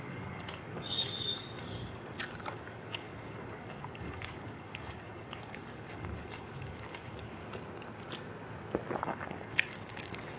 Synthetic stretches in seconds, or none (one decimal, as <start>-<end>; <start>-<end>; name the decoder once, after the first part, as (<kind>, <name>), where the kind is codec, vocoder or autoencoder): 0.0-7.4 (codec, DAC); 9.0-10.4